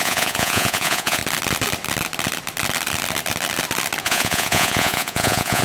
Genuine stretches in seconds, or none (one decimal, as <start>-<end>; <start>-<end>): 1.2-4.0